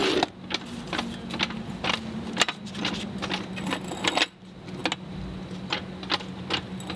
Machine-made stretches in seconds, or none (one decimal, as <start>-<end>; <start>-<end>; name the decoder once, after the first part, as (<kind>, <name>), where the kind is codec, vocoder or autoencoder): none